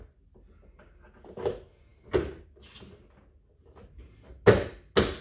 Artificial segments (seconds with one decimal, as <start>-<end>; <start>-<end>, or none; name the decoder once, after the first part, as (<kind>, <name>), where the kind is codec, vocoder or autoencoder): none